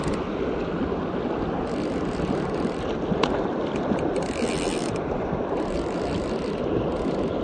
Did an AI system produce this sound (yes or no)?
no